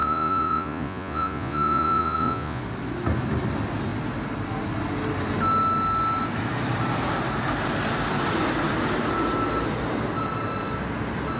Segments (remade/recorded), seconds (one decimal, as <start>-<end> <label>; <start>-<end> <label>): 0.0-2.6 remade; 2.6-11.4 recorded